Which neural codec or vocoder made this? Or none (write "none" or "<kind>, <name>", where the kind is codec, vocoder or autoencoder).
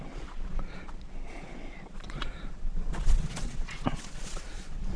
vocoder, Vocos